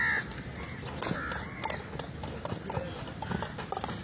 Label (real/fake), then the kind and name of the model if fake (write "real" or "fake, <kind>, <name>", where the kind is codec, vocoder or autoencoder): real